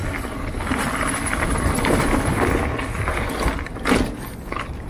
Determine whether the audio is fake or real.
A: real